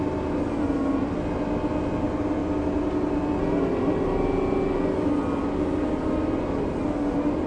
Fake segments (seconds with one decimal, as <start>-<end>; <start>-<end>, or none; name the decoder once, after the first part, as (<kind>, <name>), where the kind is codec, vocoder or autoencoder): none